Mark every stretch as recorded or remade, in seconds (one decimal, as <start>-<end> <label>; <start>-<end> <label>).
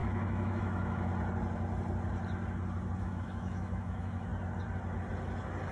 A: 0.0-1.1 remade; 1.1-3.0 recorded; 3.0-4.3 remade; 4.3-5.7 recorded